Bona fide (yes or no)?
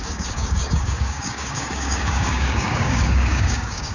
no